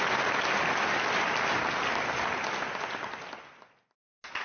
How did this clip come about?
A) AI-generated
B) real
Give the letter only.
B